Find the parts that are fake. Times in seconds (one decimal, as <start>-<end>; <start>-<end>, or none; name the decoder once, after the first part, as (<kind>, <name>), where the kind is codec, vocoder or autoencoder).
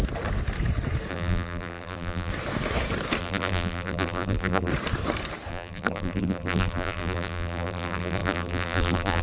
1.1-2.3 (vocoder, BigVGAN v2); 3.2-4.7; 5.5-9.2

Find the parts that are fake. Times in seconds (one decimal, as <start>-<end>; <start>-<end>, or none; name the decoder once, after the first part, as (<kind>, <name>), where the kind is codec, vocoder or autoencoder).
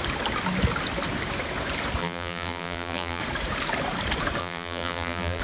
2.0-3.2 (vocoder, BigVGAN v2); 4.4-5.4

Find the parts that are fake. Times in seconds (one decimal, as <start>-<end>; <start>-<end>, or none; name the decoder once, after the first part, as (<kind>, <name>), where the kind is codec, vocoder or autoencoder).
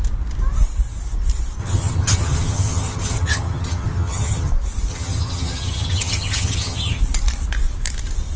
1.6-4.5 (vocoder, HiFi-GAN); 4.9-7.0